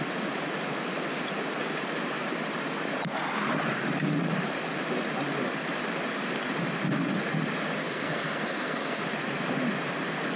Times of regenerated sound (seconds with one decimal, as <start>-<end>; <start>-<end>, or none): 7.8-9.0